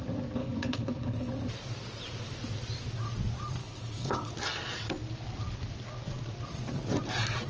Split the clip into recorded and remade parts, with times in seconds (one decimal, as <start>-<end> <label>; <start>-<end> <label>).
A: 0.0-0.4 recorded; 0.4-1.3 remade; 1.3-3.6 recorded; 3.6-4.3 remade; 4.3-7.5 recorded